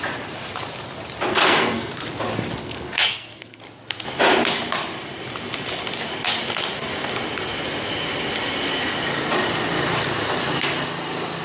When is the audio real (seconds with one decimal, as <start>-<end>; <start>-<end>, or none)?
0.0-1.3; 1.9-2.6; 3.6-11.4